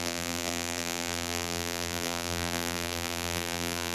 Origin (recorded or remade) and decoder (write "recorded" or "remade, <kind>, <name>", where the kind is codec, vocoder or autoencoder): remade, vocoder, BigVGAN v2